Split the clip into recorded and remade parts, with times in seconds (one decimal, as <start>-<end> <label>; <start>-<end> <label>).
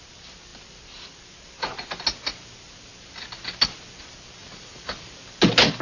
0.0-4.4 recorded; 4.4-4.9 remade; 4.9-5.8 recorded